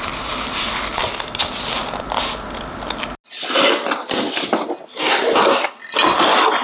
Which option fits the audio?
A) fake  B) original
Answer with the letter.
B